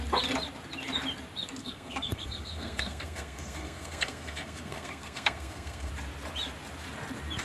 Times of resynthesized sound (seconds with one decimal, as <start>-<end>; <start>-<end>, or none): 1.6-5.9